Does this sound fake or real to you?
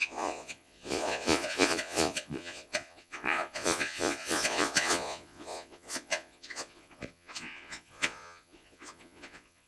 fake